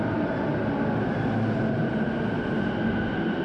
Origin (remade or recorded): recorded